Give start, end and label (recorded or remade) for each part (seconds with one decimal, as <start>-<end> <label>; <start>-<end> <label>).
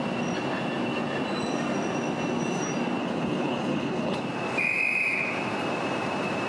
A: 0.0-3.0 recorded; 3.0-4.2 remade; 4.2-6.5 recorded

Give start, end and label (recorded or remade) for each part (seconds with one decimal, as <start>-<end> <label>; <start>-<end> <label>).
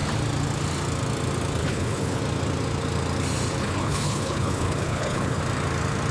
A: 0.0-1.6 recorded; 1.6-2.2 remade; 2.2-3.6 recorded; 3.6-5.4 remade; 5.4-6.1 recorded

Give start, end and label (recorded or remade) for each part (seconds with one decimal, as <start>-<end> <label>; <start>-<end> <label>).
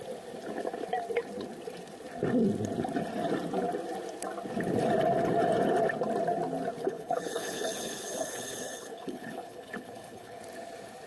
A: 0.0-6.8 recorded; 6.8-10.4 remade; 10.4-11.1 recorded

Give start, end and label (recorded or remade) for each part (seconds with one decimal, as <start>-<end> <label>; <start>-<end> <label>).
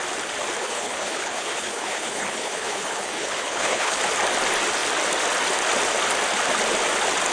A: 0.0-0.6 recorded; 0.6-4.0 remade; 4.0-7.3 recorded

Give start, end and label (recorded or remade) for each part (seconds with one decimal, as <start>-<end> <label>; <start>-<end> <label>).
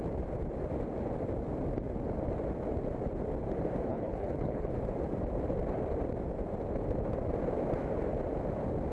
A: 0.0-3.9 recorded; 3.9-4.7 remade; 4.7-8.9 recorded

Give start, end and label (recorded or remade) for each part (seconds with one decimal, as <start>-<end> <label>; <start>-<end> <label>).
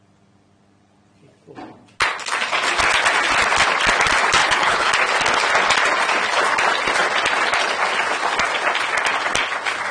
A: 0.0-4.4 recorded; 4.4-4.9 remade; 4.9-9.9 recorded